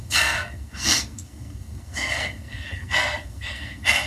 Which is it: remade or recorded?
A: remade